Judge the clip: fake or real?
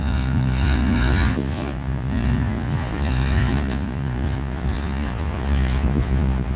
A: fake